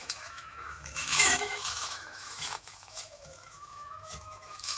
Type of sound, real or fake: fake